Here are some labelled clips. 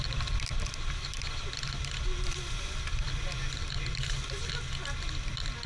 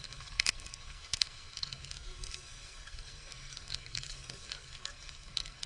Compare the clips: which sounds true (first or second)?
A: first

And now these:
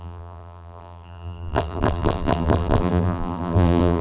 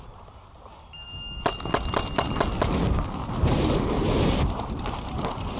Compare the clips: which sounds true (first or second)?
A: second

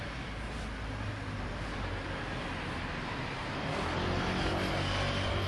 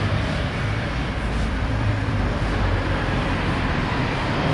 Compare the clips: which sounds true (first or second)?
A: first